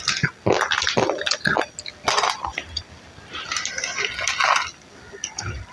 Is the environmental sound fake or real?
real